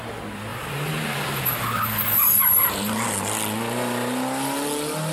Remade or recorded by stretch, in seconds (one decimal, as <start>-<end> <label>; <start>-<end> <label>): 0.0-0.5 recorded; 0.5-1.4 remade; 1.4-5.1 recorded